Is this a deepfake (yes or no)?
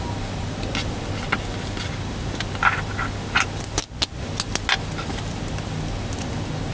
no